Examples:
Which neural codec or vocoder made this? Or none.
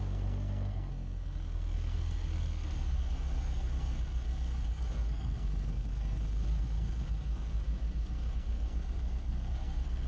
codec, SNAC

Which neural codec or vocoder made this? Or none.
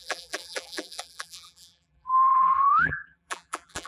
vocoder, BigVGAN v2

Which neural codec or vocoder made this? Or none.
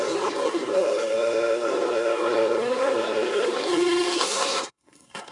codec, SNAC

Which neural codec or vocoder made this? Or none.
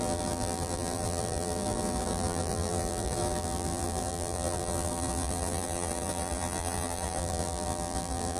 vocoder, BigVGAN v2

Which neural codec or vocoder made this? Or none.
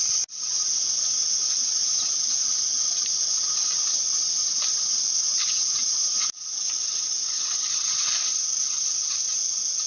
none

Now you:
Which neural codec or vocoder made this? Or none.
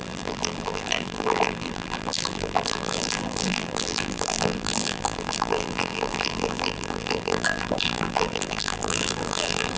vocoder, BigVGAN v2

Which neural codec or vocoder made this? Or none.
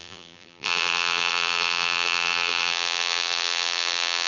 vocoder, BigVGAN v2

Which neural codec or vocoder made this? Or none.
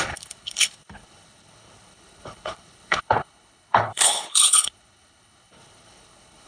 codec, HILCodec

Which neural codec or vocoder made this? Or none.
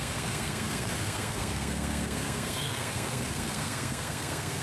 codec, SNAC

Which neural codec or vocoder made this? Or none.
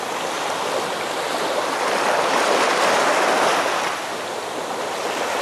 none